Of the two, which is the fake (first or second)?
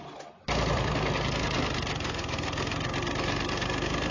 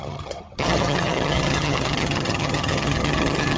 second